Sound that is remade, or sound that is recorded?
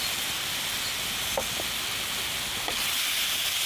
recorded